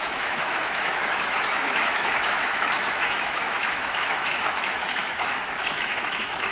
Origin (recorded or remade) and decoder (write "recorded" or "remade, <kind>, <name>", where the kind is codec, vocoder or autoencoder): remade, autoencoder, DAC-VAE